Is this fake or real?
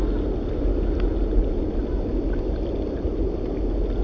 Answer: real